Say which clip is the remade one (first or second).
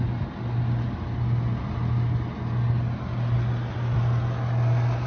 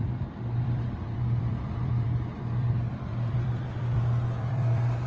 second